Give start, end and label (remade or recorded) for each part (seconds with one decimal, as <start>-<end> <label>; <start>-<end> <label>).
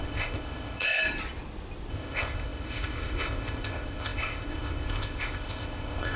0.0-1.0 remade; 1.0-1.9 recorded; 1.9-6.2 remade